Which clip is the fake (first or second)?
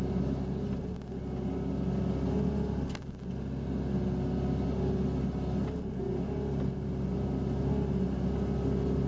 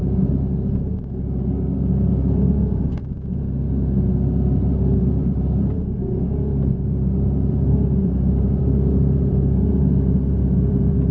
second